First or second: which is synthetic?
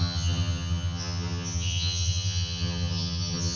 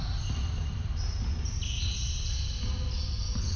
first